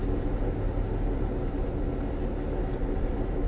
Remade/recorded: recorded